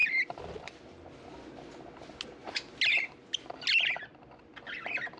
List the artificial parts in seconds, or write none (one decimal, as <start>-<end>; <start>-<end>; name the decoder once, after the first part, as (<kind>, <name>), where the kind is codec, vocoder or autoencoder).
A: 4.1-5.2 (vocoder, BigVGAN v2)